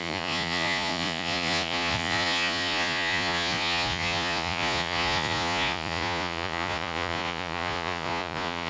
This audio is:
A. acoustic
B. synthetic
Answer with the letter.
B